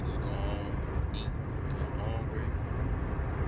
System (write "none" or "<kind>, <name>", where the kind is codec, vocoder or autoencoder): none